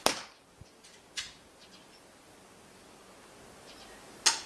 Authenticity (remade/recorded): recorded